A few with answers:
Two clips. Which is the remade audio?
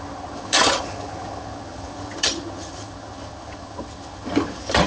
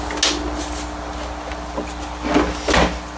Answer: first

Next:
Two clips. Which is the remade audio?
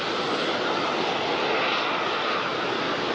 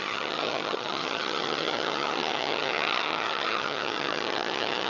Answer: second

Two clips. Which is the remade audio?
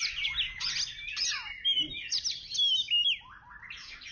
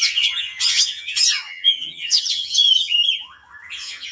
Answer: second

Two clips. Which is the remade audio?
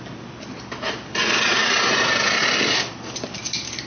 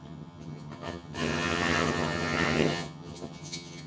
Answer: second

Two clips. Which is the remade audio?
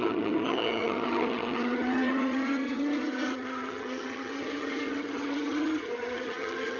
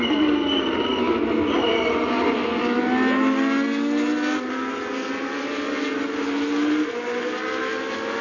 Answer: first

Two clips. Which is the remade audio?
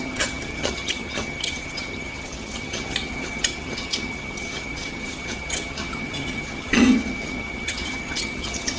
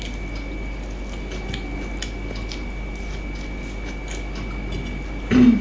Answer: first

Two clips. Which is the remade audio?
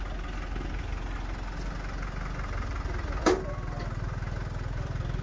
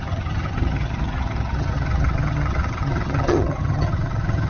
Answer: second